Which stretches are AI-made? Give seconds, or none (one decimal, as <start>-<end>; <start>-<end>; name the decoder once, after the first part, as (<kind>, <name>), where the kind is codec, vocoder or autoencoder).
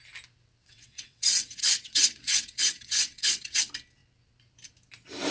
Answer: 0.6-3.6 (vocoder, WaveNeXt)